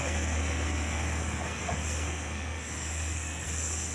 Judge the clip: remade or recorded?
remade